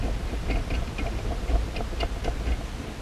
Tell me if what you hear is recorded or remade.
recorded